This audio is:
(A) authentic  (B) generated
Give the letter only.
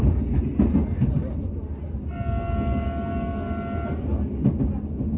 A